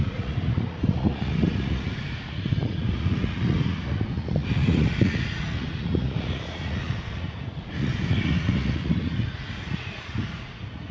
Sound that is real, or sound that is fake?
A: fake